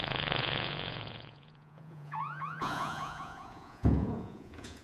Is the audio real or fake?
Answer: fake